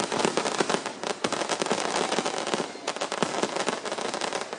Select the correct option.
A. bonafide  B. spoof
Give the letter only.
A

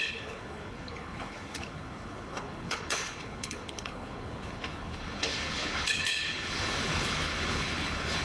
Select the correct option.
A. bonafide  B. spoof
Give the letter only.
B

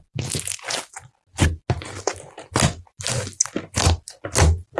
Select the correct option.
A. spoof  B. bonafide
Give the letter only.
B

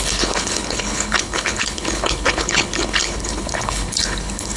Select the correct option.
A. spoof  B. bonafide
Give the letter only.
A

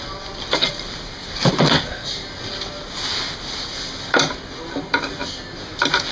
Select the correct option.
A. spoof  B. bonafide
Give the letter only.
B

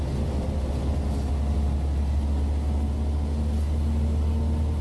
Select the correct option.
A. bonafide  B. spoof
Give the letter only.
A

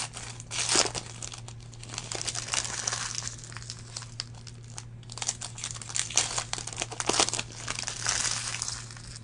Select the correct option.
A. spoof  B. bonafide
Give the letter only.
B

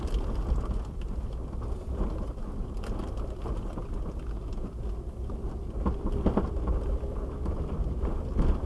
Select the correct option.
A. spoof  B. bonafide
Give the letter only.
B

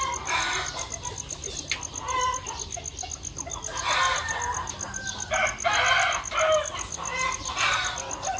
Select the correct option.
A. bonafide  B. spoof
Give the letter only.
A